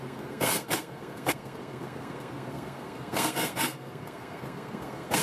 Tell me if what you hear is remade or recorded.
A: remade